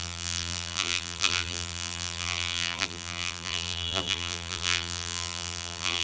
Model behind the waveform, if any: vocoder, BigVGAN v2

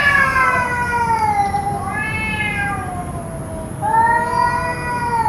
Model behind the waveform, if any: none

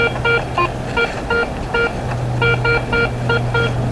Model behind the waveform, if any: none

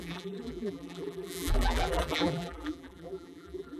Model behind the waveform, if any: vocoder, BigVGAN v2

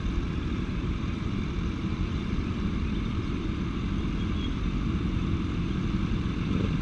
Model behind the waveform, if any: vocoder, BigVGAN v2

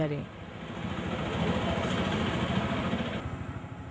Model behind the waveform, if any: vocoder, BigVGAN v2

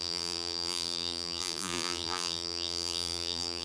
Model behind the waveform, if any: vocoder, BigVGAN v2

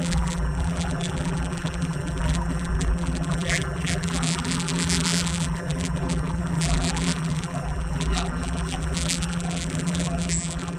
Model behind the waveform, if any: vocoder, BigVGAN v2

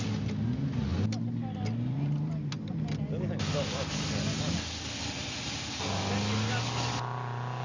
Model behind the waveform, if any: none